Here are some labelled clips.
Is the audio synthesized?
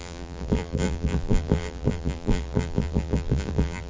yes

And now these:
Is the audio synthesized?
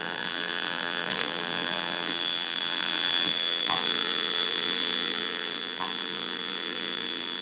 yes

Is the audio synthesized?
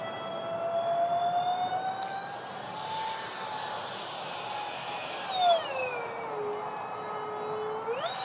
no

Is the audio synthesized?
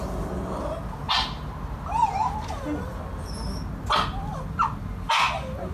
no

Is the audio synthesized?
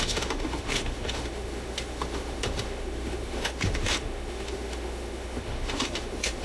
yes